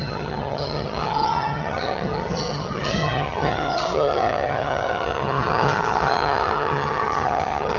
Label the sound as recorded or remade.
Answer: remade